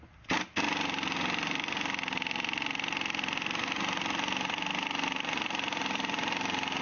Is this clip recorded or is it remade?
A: recorded